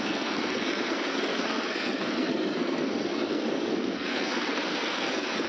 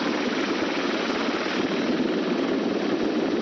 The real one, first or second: second